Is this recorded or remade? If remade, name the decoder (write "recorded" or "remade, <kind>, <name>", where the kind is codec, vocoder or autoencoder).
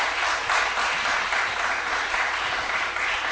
recorded